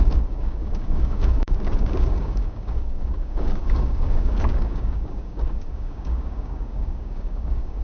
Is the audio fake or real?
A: fake